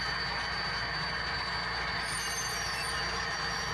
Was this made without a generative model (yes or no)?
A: yes